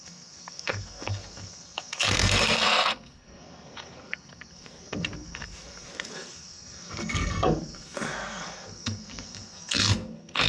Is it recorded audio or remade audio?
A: remade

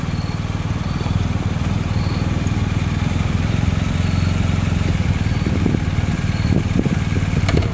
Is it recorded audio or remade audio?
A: recorded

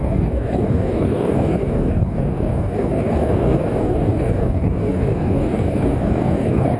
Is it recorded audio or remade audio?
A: remade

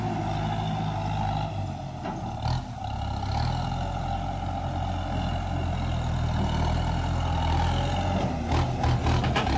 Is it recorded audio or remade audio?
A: recorded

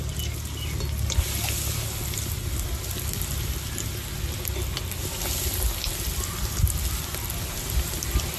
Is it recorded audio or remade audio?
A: recorded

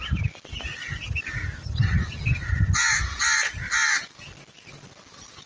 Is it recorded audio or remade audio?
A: recorded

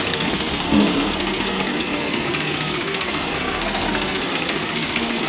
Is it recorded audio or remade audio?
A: remade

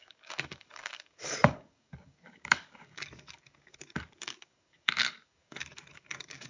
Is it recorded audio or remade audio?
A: remade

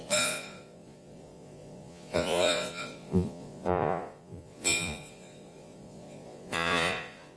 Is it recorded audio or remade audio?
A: remade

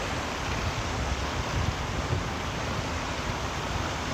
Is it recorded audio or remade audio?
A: recorded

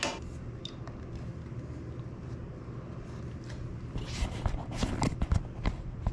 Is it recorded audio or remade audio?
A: recorded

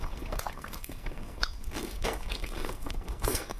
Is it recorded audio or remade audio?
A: remade